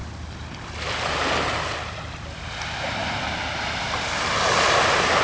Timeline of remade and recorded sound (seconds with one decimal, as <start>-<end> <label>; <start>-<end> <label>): 0.0-5.2 recorded